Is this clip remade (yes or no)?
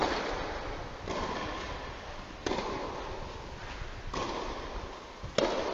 no